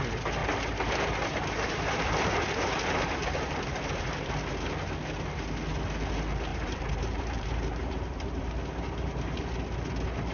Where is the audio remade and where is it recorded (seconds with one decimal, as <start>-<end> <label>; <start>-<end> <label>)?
0.0-0.4 recorded; 0.4-4.3 remade; 4.3-6.5 recorded; 6.5-9.4 remade; 9.4-10.3 recorded

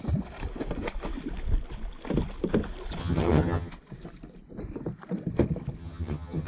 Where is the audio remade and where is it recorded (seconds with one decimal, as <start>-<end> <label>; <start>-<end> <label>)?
0.0-3.0 recorded; 3.0-3.7 remade; 3.7-5.8 recorded; 5.8-6.5 remade